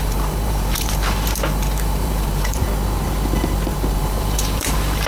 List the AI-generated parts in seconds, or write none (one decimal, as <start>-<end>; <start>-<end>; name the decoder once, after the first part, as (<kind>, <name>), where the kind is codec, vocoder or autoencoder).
0.0-2.6 (vocoder, BigVGAN v2); 4.0-5.1